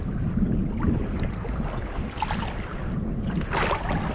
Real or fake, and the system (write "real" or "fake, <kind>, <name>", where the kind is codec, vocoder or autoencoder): real